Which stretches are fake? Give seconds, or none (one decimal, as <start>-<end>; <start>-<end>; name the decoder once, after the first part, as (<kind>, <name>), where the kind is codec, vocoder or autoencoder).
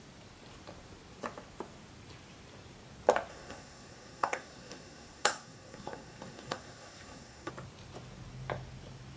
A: 3.3-7.5 (codec, SNAC)